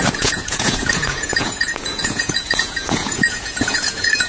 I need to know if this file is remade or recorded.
remade